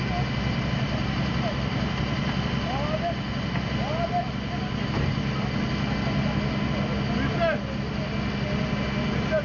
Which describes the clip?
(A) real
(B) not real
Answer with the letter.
A